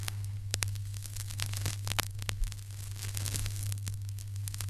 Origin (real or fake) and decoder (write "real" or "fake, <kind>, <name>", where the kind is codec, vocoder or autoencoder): fake, codec, SNAC